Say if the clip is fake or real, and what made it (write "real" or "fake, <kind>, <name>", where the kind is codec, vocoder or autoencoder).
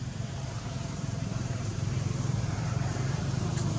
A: fake, vocoder, BigVGAN v2